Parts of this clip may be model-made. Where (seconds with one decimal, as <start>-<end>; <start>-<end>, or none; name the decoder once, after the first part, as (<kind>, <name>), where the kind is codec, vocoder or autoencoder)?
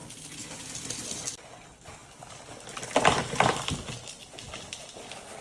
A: none